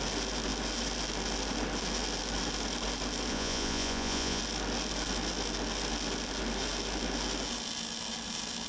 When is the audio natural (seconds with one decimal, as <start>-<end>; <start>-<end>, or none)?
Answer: 0.0-3.3; 4.4-8.7